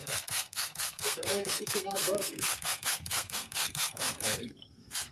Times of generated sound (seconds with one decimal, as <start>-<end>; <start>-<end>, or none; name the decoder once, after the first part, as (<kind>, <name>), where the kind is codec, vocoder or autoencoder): 0.0-5.1 (codec, SNAC)